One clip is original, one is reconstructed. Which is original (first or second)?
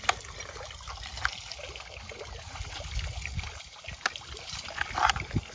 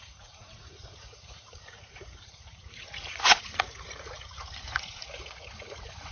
first